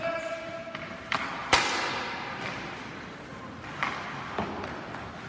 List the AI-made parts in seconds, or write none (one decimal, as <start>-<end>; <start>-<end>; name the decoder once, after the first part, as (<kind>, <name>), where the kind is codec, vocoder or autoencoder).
none